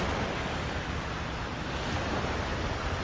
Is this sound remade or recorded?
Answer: recorded